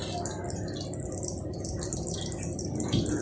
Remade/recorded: recorded